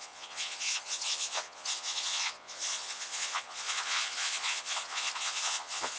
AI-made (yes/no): yes